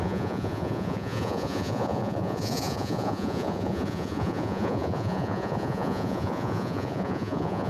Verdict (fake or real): fake